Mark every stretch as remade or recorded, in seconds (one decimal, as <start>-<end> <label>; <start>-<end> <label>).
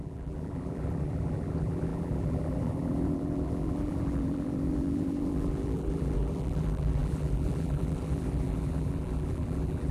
0.0-9.9 remade